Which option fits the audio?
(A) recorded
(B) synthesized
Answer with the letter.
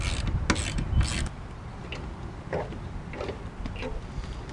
A